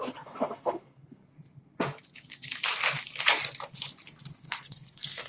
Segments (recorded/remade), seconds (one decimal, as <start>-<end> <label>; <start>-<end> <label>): 0.0-1.2 remade; 1.2-4.4 recorded; 4.4-5.3 remade